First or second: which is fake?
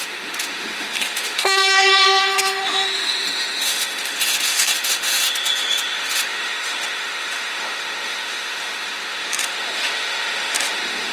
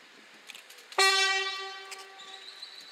first